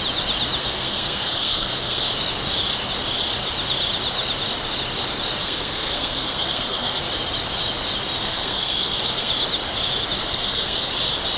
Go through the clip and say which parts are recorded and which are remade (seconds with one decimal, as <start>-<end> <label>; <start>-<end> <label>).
0.0-0.6 recorded; 0.6-2.1 remade; 2.1-5.4 recorded; 5.4-7.0 remade; 7.0-8.2 recorded; 8.2-9.3 remade; 9.3-10.2 recorded; 10.2-10.9 remade; 10.9-11.4 recorded